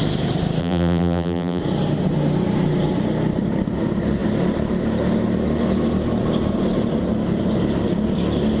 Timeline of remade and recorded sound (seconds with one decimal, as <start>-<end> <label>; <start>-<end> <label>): 0.0-0.6 recorded; 0.6-1.6 remade; 1.6-8.6 recorded